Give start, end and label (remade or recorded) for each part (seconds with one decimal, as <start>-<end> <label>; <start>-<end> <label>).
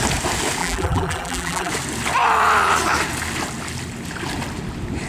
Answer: 0.0-0.6 recorded; 0.6-1.7 remade; 1.7-5.1 recorded